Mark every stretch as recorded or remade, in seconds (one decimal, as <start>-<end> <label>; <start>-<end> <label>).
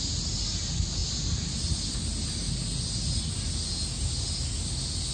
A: 0.0-5.1 recorded